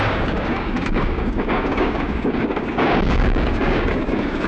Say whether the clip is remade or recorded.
remade